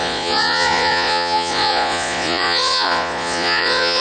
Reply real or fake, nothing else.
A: fake